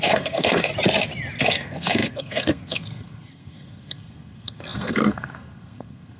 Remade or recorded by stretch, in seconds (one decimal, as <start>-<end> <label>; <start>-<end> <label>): 0.0-0.7 remade; 0.7-1.4 recorded; 1.4-6.2 remade

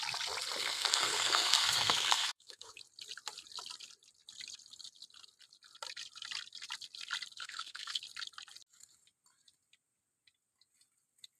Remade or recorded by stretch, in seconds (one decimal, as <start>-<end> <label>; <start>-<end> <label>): 0.0-0.6 recorded; 0.6-2.8 remade; 2.8-7.4 recorded; 7.4-8.0 remade; 8.0-11.4 recorded

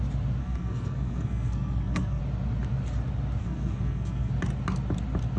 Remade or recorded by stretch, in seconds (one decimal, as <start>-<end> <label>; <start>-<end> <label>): 0.0-0.4 recorded; 0.4-2.2 remade; 2.2-3.4 recorded; 3.4-4.3 remade; 4.3-5.4 recorded

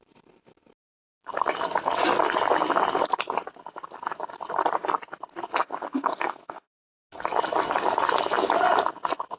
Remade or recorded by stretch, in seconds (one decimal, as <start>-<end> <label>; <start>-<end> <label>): 0.0-5.6 recorded; 5.6-6.8 remade; 6.8-9.4 recorded

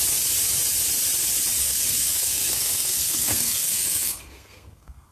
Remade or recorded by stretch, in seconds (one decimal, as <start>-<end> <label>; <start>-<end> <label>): 0.0-1.6 recorded; 1.6-5.1 remade

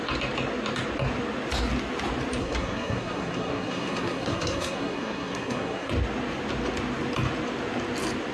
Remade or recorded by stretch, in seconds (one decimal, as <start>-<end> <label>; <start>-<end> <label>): 0.0-2.4 recorded; 2.4-5.9 remade; 5.9-8.3 recorded

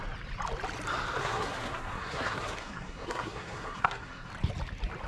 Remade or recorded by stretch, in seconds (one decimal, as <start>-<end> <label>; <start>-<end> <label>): 0.0-1.2 recorded; 1.2-4.3 remade; 4.3-5.1 recorded